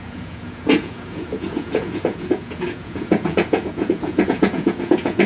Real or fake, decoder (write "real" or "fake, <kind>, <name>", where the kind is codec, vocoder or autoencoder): fake, vocoder, Vocos